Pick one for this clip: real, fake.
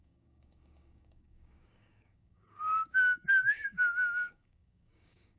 fake